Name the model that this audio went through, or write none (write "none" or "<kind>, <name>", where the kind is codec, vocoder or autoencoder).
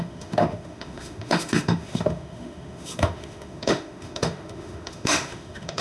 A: autoencoder, DAC-VAE